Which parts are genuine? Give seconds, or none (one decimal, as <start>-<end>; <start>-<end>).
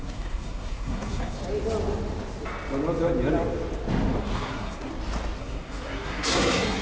1.4-4.2; 4.9-5.4